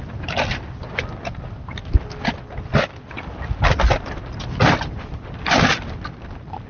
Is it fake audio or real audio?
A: real